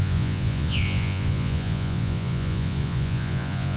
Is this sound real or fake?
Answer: fake